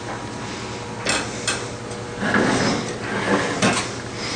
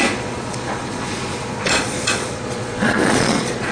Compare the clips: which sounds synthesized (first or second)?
second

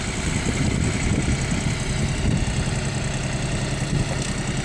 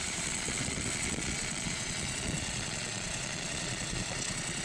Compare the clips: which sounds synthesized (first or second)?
second